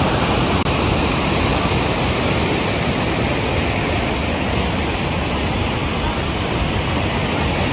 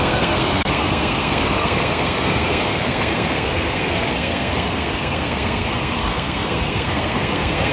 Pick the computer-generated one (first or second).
second